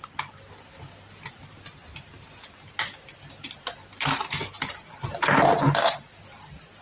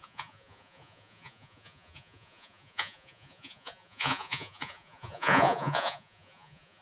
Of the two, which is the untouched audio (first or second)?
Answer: first